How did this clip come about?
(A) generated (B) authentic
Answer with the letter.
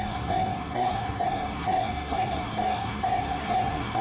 A